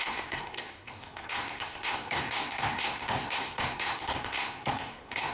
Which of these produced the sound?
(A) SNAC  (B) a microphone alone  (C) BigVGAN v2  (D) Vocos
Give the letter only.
A